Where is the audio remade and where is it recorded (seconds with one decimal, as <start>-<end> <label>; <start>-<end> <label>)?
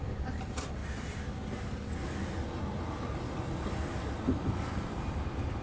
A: 0.0-0.8 remade; 0.8-4.2 recorded; 4.2-5.6 remade